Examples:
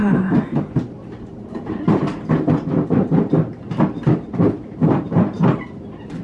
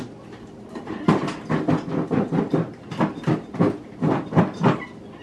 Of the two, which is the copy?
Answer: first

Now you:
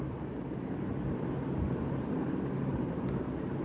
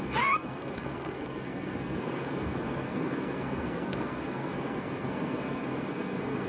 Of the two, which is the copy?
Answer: second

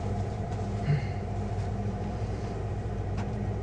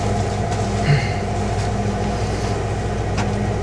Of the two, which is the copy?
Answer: first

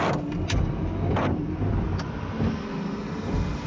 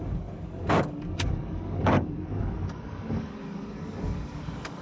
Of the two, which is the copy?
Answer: second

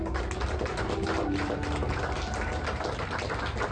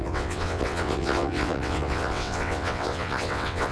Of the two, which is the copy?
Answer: second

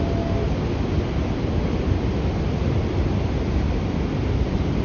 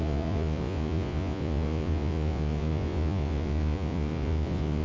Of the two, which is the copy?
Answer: second